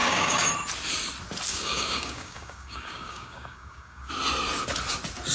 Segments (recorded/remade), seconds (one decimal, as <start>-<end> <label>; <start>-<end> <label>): 0.0-0.5 remade; 0.5-1.5 recorded; 1.5-4.1 remade; 4.1-5.3 recorded